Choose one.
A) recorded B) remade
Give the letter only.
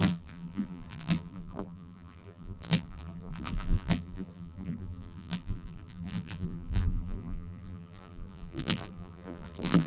B